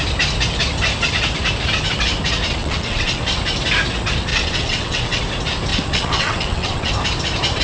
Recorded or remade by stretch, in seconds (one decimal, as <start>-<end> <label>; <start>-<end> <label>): 0.0-2.6 recorded; 2.6-3.2 remade; 3.2-4.3 recorded; 4.3-5.2 remade; 5.2-5.7 recorded; 5.7-6.9 remade; 6.9-7.6 recorded